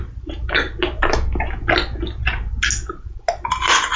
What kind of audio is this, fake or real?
real